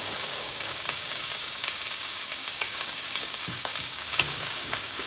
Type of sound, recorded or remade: remade